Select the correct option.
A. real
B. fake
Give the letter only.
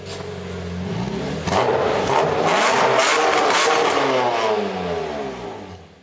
A